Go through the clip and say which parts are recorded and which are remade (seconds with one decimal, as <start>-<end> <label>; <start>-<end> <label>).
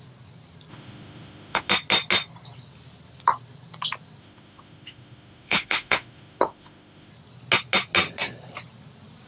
0.0-0.7 recorded; 0.7-1.7 remade; 1.7-4.2 recorded; 4.2-7.1 remade; 7.1-9.3 recorded